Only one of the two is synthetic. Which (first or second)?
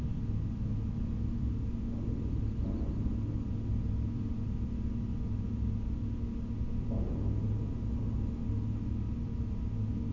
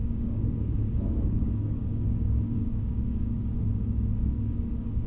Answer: second